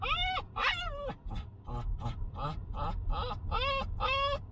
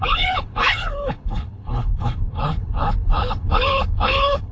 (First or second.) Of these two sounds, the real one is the first